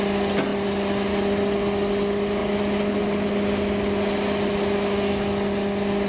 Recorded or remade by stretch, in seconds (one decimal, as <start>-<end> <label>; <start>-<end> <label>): 0.0-6.1 recorded